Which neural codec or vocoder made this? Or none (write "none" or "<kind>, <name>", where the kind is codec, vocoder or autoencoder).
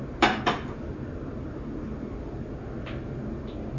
none